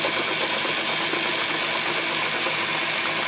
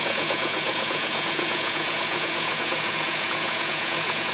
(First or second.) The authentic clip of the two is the first